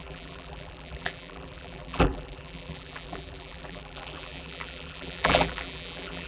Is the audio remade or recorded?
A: remade